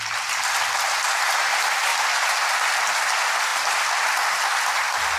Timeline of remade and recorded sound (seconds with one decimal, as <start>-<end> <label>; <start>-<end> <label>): 0.0-5.2 recorded

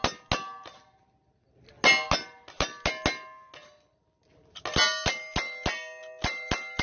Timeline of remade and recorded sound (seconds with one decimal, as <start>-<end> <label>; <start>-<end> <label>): 0.0-6.8 recorded

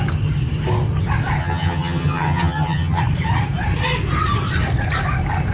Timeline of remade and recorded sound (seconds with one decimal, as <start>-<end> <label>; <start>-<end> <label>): 0.0-1.4 recorded; 1.4-3.0 remade; 3.0-5.5 recorded

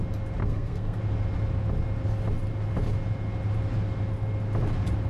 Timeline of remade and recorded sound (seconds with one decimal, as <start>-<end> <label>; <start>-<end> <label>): 0.0-0.4 recorded; 0.4-1.0 remade; 1.0-5.1 recorded

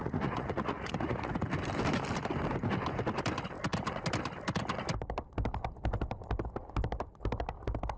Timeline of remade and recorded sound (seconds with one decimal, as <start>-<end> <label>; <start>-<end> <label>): 0.0-1.3 remade; 1.3-8.0 recorded

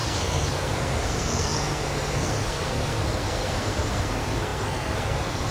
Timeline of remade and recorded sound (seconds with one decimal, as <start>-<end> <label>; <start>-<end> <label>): 0.0-5.5 remade

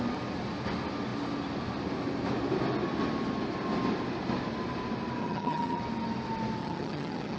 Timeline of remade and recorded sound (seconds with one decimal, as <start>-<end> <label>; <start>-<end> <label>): 0.0-5.2 recorded; 5.2-5.8 remade; 5.8-6.6 recorded; 6.6-7.4 remade